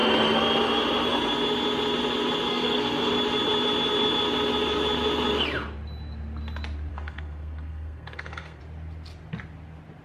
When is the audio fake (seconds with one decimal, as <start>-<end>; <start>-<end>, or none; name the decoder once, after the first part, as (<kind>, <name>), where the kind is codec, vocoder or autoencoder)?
2.5-3.1 (codec, SNAC); 6.9-8.6